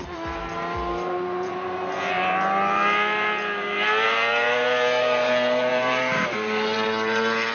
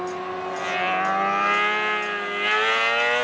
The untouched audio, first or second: second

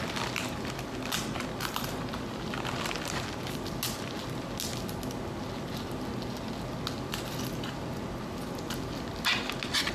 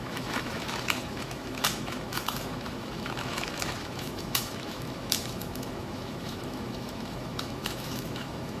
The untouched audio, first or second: first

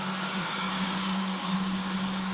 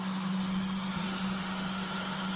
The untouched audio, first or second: second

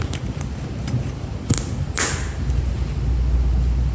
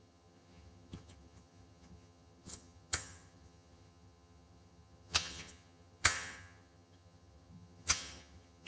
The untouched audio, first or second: first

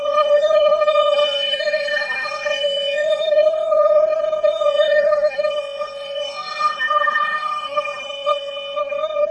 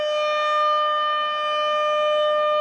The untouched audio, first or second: second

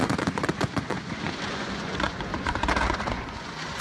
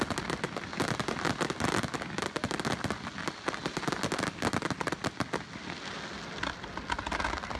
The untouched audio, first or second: second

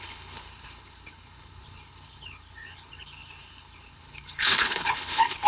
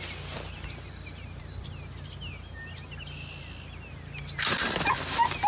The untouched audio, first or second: second